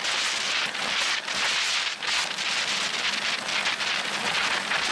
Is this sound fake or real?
real